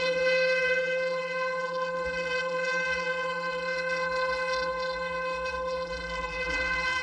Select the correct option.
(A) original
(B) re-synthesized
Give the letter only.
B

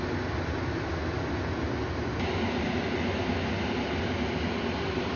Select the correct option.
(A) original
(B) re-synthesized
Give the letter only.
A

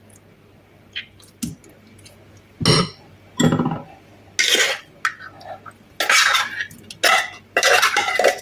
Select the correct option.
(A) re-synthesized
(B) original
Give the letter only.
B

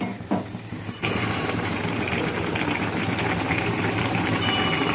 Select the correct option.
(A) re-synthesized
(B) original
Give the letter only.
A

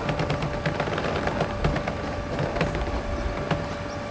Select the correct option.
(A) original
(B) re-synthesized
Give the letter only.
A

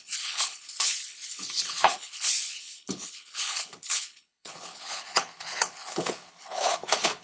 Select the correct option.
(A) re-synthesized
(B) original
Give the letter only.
A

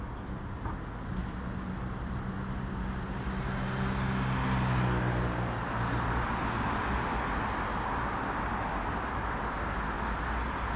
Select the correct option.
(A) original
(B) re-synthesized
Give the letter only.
A